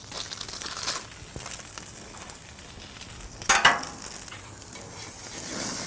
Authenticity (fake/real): real